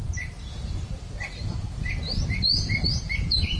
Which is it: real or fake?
fake